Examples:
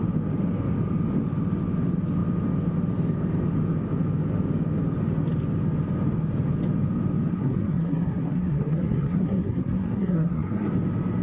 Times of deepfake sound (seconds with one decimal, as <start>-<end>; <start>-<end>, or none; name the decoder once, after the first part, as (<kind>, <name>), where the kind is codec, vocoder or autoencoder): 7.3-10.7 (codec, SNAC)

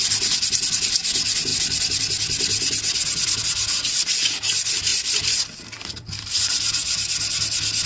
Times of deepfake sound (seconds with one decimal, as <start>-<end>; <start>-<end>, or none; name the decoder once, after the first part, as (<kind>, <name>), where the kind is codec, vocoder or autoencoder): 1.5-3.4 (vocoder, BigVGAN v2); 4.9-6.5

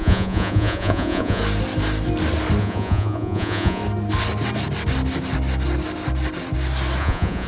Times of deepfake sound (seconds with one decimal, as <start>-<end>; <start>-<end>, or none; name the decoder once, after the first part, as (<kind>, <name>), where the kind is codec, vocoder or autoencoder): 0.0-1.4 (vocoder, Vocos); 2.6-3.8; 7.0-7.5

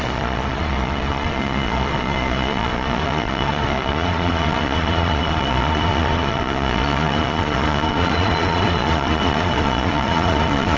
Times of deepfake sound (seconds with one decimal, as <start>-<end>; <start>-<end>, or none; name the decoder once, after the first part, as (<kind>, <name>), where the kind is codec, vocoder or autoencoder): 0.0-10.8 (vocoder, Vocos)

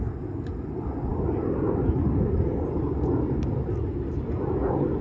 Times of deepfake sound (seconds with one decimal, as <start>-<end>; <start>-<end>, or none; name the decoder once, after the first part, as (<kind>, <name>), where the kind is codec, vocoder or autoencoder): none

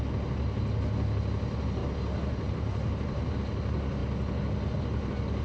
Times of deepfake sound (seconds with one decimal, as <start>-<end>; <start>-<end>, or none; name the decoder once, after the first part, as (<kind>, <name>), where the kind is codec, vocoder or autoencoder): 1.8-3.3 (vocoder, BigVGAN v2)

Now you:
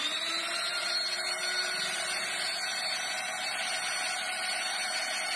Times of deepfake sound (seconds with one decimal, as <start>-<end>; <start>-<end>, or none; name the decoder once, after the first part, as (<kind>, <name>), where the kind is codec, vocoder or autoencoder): 0.0-3.5 (vocoder, BigVGAN v2); 4.2-5.4

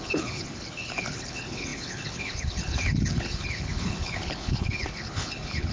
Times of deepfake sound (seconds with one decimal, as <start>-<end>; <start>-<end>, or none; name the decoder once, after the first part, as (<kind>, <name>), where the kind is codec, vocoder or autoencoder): 0.0-5.7 (codec, HILCodec)